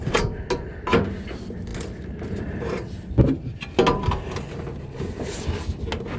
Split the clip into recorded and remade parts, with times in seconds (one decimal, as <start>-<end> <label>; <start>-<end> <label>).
0.0-6.2 recorded